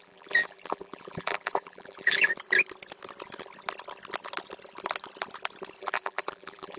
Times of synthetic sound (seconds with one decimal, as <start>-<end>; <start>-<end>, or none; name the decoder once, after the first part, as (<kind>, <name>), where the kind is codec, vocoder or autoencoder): 0.0-2.3 (vocoder, BigVGAN v2); 5.8-6.8